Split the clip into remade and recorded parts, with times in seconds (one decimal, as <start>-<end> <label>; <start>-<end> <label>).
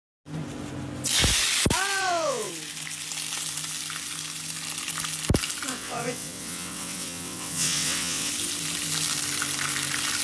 0.0-2.0 recorded; 2.0-2.5 remade; 2.5-5.7 recorded; 5.7-8.3 remade; 8.3-10.2 recorded